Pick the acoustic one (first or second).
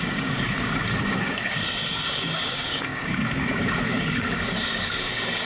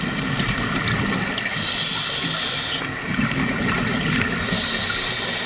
second